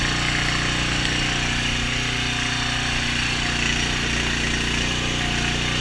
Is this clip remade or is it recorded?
recorded